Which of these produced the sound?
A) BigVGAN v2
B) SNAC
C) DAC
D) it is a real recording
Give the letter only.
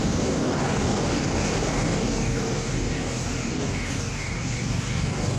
C